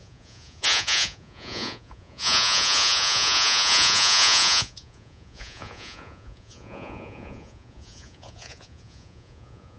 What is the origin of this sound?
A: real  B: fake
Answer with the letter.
B